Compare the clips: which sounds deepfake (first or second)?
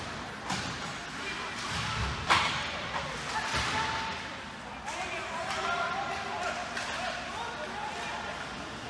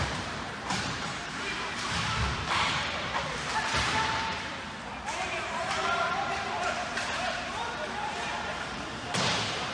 second